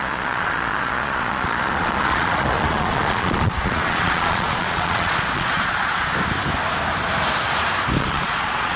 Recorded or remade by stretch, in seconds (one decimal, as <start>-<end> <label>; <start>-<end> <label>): 0.0-6.1 remade; 6.1-8.0 recorded; 8.0-8.8 remade